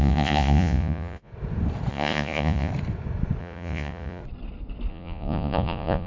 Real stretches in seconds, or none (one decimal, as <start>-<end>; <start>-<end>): 1.3-1.9; 2.7-3.4; 4.2-4.9

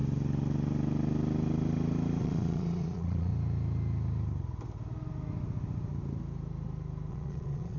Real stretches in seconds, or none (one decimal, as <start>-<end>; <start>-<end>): 0.0-2.2; 3.3-7.1